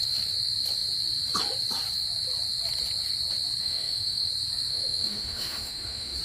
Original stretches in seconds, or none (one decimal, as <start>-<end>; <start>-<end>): 0.0-3.6; 4.3-4.7